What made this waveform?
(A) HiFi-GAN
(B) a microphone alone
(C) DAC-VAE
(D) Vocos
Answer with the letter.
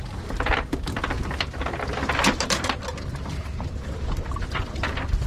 B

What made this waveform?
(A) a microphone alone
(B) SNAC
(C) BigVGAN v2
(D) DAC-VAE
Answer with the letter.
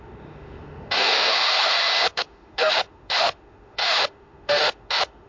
D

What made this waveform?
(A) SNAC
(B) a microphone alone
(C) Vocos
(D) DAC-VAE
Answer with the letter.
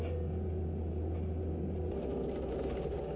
B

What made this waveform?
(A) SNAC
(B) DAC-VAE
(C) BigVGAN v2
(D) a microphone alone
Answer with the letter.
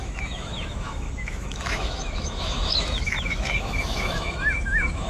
B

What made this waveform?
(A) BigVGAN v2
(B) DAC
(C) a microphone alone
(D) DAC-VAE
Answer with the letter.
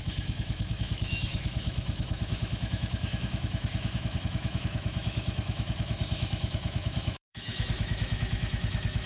D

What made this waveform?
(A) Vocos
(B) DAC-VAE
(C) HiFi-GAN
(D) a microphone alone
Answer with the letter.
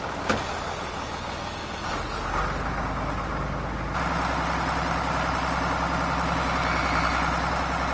D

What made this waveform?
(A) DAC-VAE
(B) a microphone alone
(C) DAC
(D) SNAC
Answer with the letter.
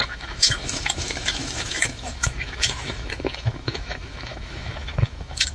A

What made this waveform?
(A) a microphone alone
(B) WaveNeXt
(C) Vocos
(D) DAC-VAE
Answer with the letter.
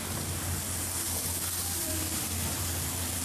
A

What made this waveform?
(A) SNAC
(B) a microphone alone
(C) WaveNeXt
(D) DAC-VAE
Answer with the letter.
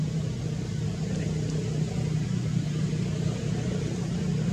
B